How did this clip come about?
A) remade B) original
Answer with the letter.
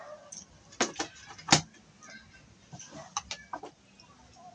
B